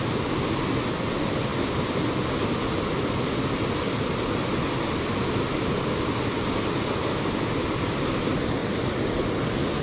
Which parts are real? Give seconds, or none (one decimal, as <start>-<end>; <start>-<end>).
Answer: 0.0-9.8